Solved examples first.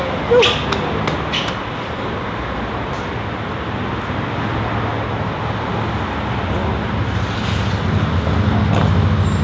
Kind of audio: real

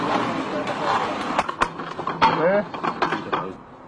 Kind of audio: real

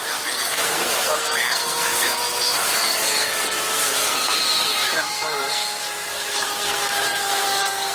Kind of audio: fake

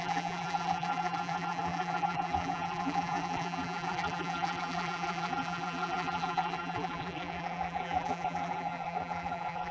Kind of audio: fake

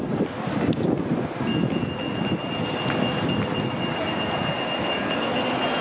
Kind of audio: real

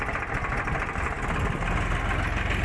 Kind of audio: real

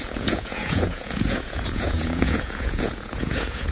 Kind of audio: fake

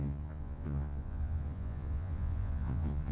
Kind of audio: fake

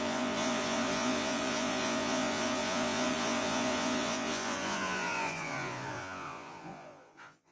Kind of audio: fake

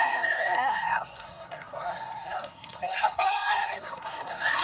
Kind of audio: fake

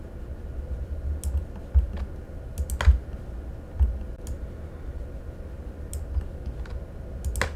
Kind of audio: real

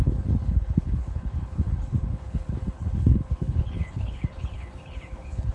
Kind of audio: fake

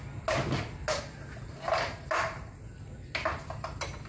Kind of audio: real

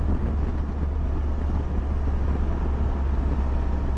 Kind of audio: real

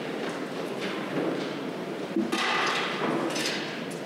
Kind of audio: real